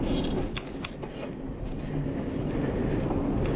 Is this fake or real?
real